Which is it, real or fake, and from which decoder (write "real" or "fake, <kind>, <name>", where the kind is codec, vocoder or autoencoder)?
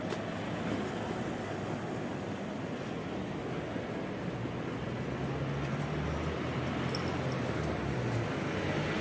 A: real